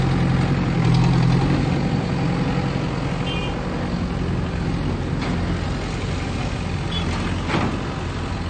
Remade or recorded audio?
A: recorded